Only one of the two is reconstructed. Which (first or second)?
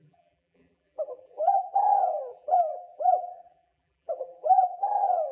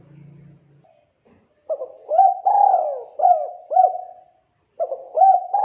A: first